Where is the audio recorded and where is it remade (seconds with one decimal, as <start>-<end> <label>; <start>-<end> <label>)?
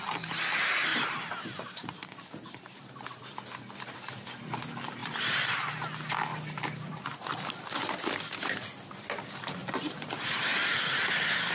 0.0-0.9 recorded; 0.9-3.2 remade; 3.2-5.0 recorded; 5.0-5.7 remade; 5.7-11.5 recorded